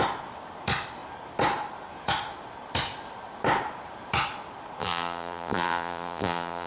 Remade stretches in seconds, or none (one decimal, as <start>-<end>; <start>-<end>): 4.8-6.7